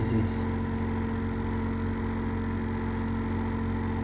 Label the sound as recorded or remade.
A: recorded